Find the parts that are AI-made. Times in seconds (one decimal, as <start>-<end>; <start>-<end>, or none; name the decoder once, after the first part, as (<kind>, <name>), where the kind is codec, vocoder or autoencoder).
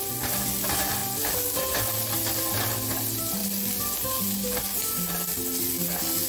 none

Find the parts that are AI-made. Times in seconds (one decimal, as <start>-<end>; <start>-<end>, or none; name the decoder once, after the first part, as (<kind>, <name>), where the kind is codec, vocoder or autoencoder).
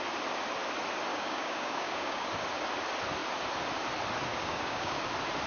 1.1-2.3 (codec, DAC); 4.3-5.0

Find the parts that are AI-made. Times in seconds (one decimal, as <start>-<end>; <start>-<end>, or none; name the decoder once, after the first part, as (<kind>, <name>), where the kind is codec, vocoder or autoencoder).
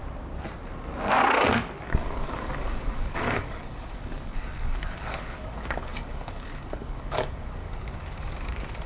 1.8-8.9 (codec, DAC)